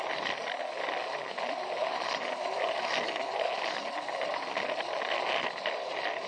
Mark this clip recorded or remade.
recorded